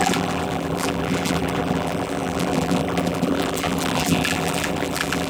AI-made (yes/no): yes